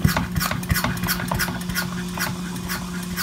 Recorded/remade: recorded